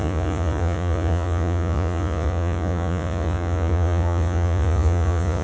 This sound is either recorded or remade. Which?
remade